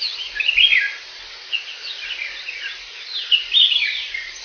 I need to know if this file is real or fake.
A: real